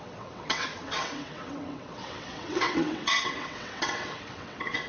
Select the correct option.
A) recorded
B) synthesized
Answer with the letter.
B